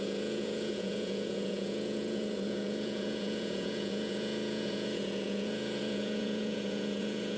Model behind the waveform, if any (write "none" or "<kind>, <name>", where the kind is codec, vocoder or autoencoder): vocoder, Vocos